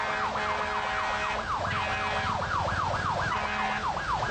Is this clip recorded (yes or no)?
yes